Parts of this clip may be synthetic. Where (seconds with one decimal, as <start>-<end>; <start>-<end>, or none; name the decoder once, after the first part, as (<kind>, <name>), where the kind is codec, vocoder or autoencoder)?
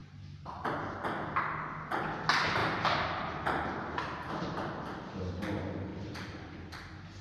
0.0-0.7 (vocoder, BigVGAN v2); 2.6-4.3